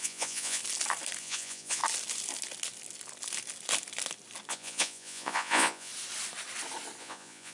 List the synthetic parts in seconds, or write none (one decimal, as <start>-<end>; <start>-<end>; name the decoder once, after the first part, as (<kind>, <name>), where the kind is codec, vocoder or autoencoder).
0.0-0.6 (vocoder, Vocos); 1.2-1.8; 4.5-5.9; 7.0-7.5